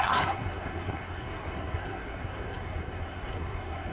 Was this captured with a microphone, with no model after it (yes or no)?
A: no